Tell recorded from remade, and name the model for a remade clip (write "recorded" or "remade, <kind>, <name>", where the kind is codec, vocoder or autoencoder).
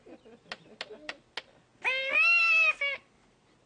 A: recorded